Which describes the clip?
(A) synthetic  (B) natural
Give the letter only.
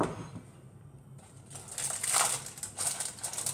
B